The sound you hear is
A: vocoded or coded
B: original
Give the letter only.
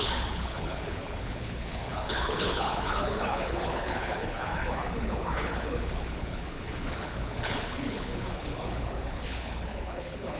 A